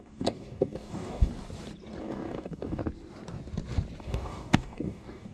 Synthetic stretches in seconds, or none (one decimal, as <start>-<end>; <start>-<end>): 0.0-1.3; 2.0-2.8; 4.0-5.3